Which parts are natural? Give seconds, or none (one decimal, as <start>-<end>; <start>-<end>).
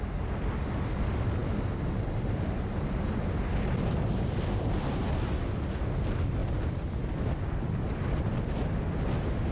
0.0-9.5